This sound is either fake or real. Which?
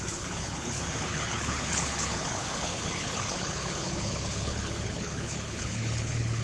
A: fake